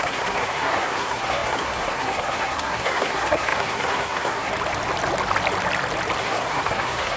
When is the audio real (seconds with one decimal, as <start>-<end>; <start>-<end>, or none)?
4.5-6.2